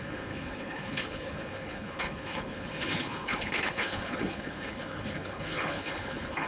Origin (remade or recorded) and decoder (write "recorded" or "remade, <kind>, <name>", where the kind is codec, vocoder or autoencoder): remade, codec, HILCodec